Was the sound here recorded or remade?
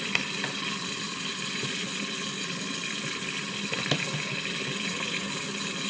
recorded